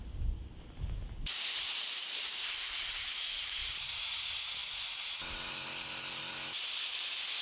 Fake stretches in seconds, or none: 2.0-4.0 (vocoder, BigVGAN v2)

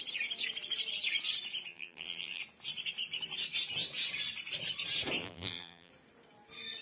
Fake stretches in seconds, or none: 1.7-2.4 (vocoder, BigVGAN v2); 5.2-5.9

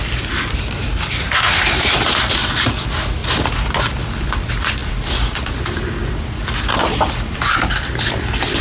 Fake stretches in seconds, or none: 0.0-3.2 (vocoder, BigVGAN v2); 3.8-8.6

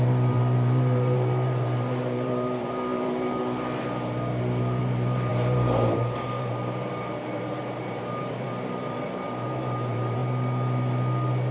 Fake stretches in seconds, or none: 0.0-10.2 (vocoder, BigVGAN v2)

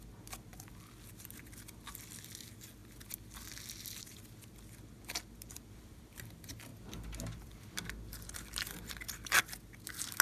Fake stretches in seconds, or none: 6.7-9.4 (vocoder, BigVGAN v2)

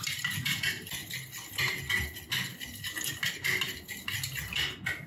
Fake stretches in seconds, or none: none

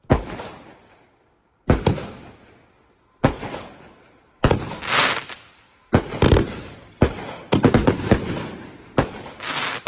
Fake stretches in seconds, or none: 1.4-2.1 (vocoder, BigVGAN v2)

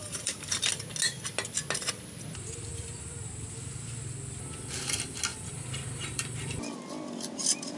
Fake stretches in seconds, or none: 0.0-0.7 (vocoder, BigVGAN v2); 2.7-3.3; 5.3-6.7